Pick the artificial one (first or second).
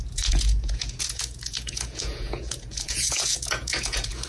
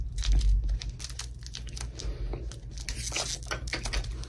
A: first